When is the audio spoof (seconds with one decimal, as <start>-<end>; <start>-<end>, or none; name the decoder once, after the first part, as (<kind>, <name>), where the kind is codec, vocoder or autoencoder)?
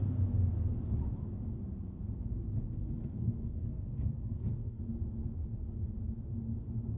3.0-4.8 (codec, SNAC)